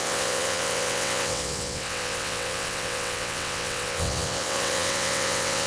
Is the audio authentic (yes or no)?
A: no